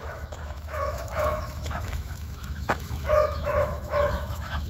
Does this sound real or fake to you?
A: fake